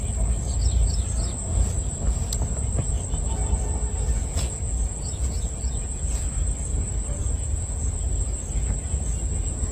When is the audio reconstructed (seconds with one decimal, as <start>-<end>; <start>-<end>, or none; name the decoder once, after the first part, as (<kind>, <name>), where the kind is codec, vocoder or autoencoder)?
4.2-6.2 (vocoder, Vocos); 7.2-8.1